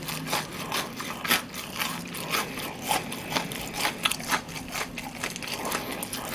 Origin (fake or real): real